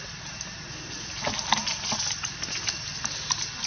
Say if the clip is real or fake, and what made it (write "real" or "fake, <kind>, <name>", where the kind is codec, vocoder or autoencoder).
real